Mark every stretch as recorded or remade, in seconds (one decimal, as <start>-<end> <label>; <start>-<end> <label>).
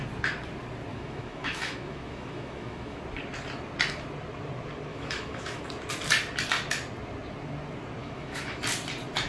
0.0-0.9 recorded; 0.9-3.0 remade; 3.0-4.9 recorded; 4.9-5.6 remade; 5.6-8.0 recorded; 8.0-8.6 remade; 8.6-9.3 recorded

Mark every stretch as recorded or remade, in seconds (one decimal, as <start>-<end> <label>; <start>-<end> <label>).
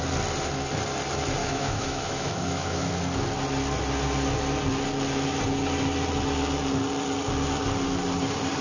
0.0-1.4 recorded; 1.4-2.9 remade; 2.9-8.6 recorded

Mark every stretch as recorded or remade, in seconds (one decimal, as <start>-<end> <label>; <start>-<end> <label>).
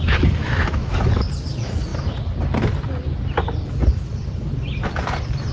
0.0-0.4 recorded; 0.4-1.0 remade; 1.0-5.5 recorded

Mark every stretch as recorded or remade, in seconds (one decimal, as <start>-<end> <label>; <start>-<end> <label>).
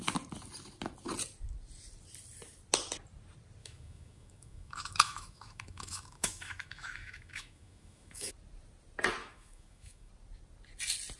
0.0-3.6 recorded; 3.6-8.3 remade; 8.3-9.2 recorded; 9.2-10.1 remade; 10.1-11.2 recorded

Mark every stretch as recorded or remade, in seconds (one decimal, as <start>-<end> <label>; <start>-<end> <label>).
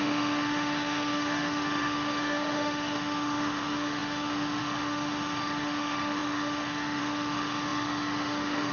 0.0-8.7 remade